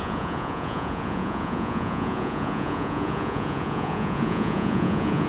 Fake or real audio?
fake